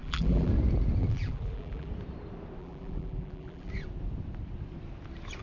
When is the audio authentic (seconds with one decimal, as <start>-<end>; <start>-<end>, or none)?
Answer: 0.5-1.0; 1.9-2.6; 3.7-5.4